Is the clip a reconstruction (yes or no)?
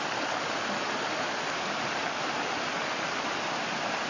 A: no